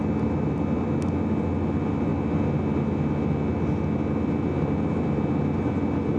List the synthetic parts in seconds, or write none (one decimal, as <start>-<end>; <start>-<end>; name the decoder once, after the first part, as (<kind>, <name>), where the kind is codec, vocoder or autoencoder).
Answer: none